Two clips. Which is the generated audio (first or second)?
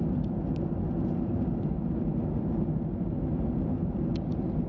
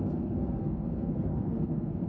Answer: second